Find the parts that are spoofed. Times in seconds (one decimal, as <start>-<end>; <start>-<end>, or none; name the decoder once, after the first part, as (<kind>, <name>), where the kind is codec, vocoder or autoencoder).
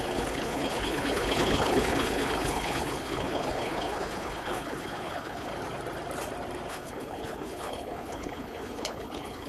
0.0-5.5 (codec, HILCodec); 6.7-9.5